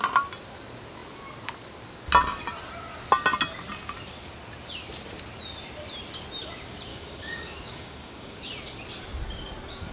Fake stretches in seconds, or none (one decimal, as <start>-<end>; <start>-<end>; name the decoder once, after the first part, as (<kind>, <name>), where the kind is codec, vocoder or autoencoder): 6.9-8.4 (codec, DAC)